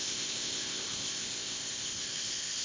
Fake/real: fake